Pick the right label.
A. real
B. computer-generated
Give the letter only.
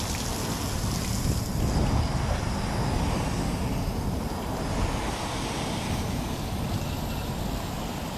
A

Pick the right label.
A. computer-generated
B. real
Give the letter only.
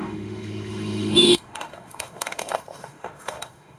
A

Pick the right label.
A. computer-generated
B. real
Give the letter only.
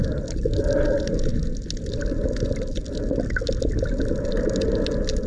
B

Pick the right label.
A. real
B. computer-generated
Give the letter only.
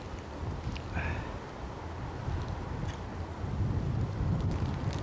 A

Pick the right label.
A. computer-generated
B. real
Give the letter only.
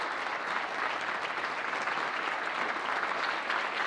B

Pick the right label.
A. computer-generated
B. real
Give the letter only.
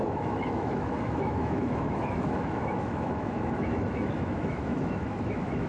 A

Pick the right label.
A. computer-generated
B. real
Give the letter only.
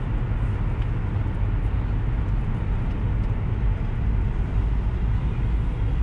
B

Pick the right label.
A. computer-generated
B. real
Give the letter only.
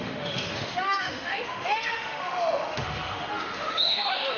A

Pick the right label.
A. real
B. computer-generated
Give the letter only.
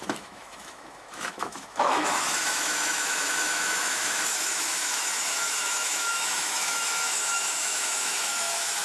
B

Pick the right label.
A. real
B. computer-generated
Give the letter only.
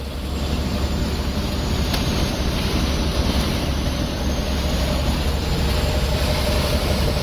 A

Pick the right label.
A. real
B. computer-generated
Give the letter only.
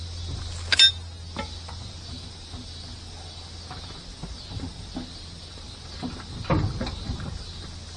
A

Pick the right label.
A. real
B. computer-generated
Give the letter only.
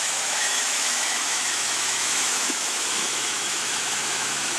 B